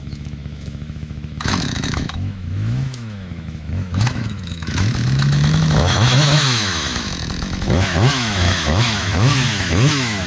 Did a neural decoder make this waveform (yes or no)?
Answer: yes